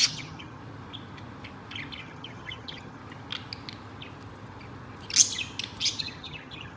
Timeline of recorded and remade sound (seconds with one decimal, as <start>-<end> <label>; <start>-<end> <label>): 0.0-0.6 remade; 0.6-2.0 recorded; 2.0-3.0 remade; 3.0-6.0 recorded; 6.0-6.8 remade